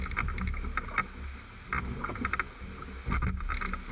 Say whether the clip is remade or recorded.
recorded